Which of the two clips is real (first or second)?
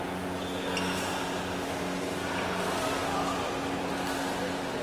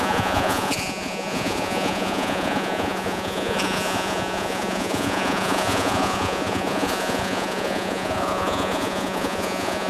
first